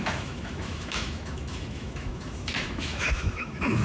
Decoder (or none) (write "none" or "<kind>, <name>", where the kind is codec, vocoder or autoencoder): autoencoder, DAC-VAE